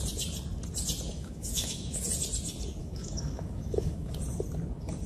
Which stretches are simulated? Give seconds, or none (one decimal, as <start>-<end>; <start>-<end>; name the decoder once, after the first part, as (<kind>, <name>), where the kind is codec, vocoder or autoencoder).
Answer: 1.1-2.0 (autoencoder, DAC-VAE); 2.8-4.1